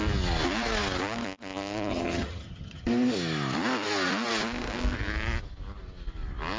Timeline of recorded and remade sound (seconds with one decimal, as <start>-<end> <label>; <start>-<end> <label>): 0.0-1.9 recorded; 1.9-2.9 remade; 2.9-6.6 recorded

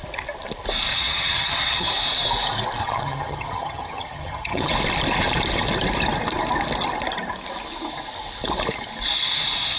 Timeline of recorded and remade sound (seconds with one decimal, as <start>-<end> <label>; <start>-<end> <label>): 0.0-0.9 recorded; 0.9-1.9 remade; 1.9-2.8 recorded; 2.8-4.7 remade; 4.7-9.8 recorded

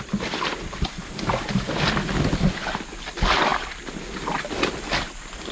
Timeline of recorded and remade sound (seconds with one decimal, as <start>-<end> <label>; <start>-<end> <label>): 0.0-5.5 recorded

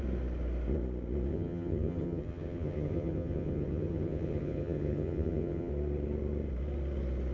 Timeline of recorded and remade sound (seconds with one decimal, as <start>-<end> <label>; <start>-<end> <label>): 0.0-1.3 recorded; 1.3-5.7 remade; 5.7-7.3 recorded

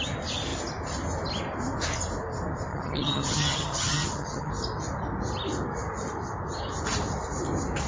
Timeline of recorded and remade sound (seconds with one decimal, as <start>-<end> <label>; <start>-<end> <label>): 0.0-2.7 recorded; 2.7-4.5 remade; 4.5-7.9 recorded

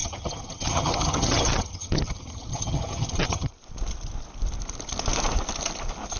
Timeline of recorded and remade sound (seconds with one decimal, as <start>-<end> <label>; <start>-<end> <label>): 0.0-3.5 remade; 3.5-6.2 recorded

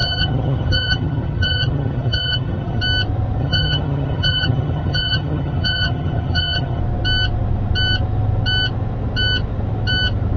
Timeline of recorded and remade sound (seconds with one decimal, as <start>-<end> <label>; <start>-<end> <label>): 0.0-2.8 remade; 2.8-3.4 recorded; 3.4-6.8 remade; 6.8-10.4 recorded